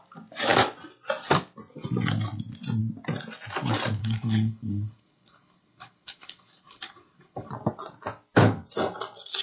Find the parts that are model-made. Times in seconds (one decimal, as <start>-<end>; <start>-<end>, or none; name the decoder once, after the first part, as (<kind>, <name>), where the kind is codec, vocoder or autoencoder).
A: 4.0-7.5 (codec, HILCodec)